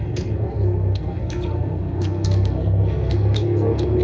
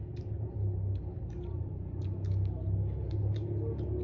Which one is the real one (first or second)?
second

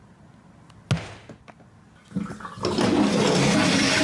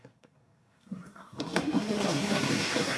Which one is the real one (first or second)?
first